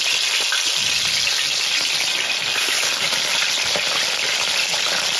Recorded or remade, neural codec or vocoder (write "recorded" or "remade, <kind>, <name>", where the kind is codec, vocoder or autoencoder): recorded